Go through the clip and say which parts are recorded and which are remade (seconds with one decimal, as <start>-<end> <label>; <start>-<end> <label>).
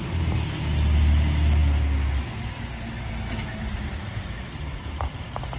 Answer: 0.0-5.6 recorded